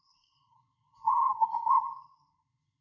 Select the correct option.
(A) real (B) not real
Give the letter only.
B